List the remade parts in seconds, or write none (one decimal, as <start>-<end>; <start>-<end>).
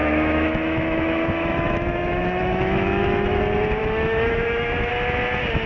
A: 0.0-3.4; 3.8-4.9